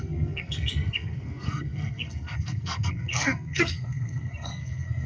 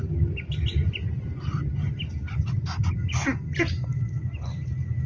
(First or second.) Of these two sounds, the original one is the second